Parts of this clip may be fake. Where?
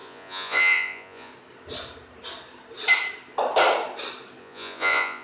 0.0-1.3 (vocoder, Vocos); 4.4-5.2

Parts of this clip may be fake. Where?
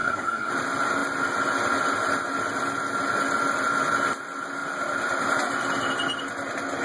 0.0-0.5 (codec, SNAC)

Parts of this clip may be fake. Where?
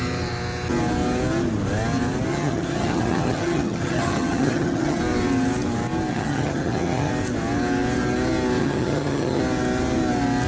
2.3-5.0 (vocoder, HiFi-GAN); 6.1-7.1; 8.6-9.4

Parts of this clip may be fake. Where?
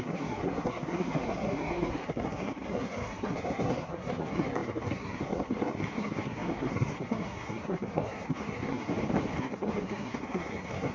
0.0-8.9 (codec, SNAC); 9.4-10.9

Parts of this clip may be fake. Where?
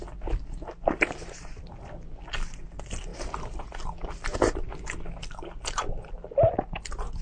none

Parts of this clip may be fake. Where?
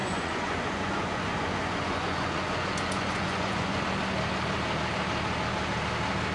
0.0-3.8 (vocoder, Vocos)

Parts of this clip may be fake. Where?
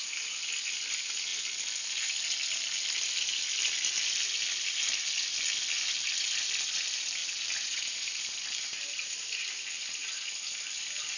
7.2-10.3 (vocoder, BigVGAN v2)